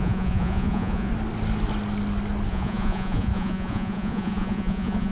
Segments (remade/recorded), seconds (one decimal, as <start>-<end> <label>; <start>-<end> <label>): 0.0-1.1 remade; 1.1-2.5 recorded; 2.5-5.1 remade